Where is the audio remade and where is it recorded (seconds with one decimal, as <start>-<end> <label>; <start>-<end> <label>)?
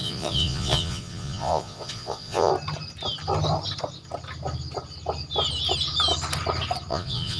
0.0-2.5 remade; 2.5-6.9 recorded; 6.9-7.4 remade